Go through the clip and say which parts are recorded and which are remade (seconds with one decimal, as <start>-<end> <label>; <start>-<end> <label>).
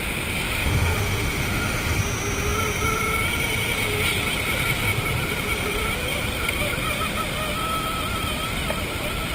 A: 0.0-0.6 recorded; 0.6-2.0 remade; 2.0-9.3 recorded